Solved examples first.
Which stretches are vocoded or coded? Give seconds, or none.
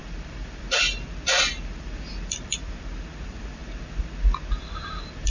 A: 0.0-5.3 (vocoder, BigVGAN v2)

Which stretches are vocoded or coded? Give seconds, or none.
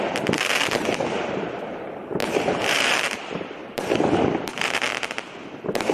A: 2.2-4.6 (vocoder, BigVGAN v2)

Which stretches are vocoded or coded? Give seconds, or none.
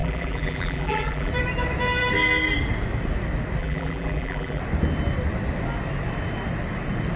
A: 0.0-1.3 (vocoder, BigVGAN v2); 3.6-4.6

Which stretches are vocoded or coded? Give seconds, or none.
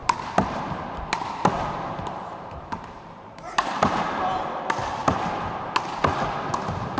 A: 0.0-4.2 (vocoder, BigVGAN v2); 5.0-5.5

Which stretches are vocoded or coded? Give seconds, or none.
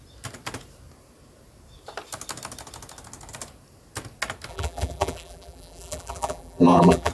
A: 4.5-7.1 (vocoder, BigVGAN v2)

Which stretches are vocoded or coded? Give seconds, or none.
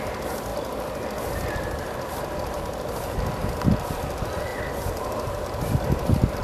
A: 4.5-5.4 (vocoder, BigVGAN v2)